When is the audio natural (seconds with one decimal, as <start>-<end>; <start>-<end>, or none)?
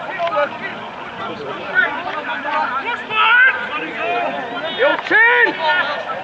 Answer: 0.0-0.7; 2.1-6.2